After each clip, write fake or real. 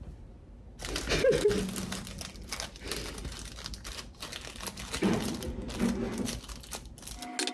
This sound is real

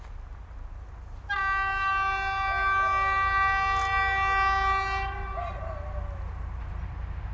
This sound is real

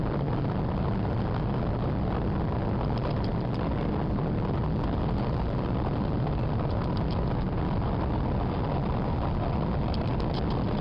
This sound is real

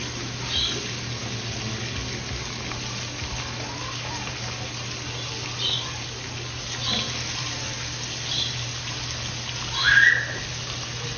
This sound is real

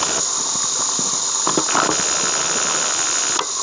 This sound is real